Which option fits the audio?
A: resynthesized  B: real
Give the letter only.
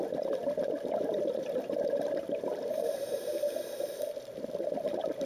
A